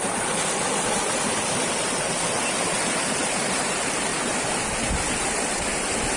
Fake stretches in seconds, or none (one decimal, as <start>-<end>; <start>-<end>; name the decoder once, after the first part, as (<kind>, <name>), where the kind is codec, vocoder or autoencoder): none